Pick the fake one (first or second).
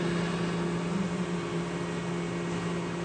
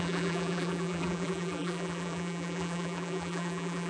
second